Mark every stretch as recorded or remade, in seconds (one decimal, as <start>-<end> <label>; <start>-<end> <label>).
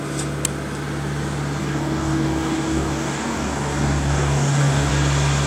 0.0-1.6 recorded; 1.6-4.9 remade; 4.9-5.5 recorded